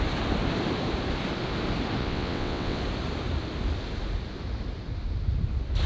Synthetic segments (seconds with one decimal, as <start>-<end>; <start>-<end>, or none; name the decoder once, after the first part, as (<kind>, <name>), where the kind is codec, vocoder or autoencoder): 2.0-2.8 (vocoder, WaveNeXt)